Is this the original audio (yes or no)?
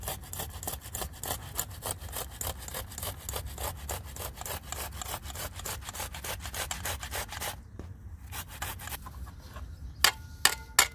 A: yes